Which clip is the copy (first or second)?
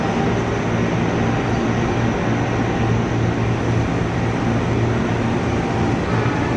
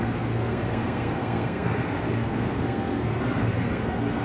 second